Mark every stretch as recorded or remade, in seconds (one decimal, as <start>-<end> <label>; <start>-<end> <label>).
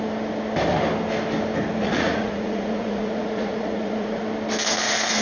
0.0-1.8 recorded; 1.8-4.2 remade; 4.2-5.2 recorded